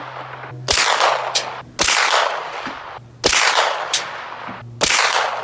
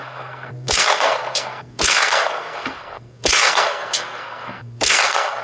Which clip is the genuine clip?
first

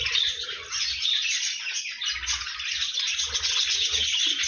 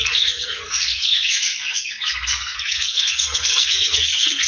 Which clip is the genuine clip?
first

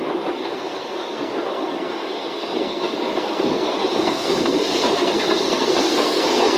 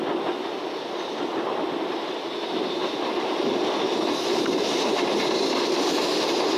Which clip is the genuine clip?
second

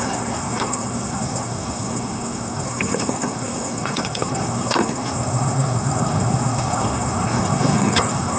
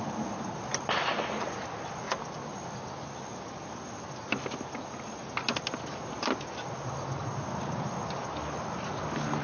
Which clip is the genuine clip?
second